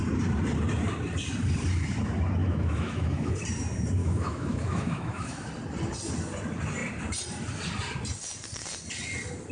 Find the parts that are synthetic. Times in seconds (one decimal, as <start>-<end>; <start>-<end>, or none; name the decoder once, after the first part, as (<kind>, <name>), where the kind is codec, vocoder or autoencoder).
2.4-3.3 (autoencoder, DAC-VAE); 4.0-5.5